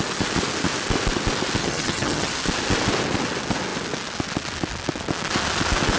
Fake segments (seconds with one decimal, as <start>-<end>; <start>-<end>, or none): 1.6-2.3